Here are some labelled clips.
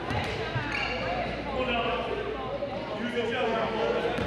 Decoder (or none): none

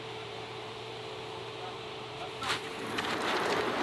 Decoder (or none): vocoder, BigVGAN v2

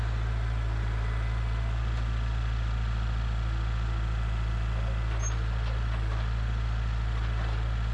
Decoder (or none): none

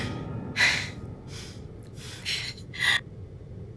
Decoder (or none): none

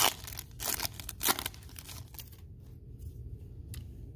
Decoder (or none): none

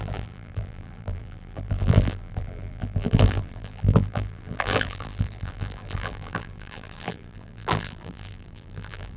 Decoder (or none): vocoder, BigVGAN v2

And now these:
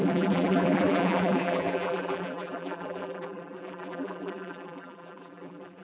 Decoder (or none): vocoder, BigVGAN v2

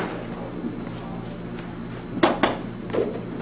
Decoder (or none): none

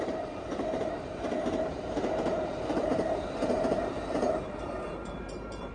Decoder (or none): vocoder, BigVGAN v2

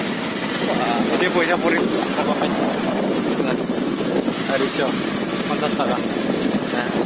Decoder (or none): none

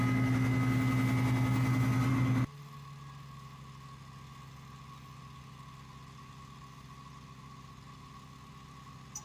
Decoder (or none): none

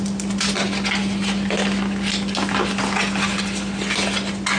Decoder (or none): none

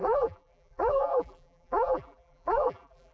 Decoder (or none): vocoder, BigVGAN v2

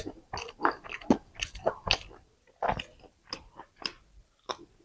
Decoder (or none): none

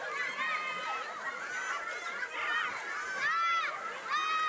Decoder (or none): none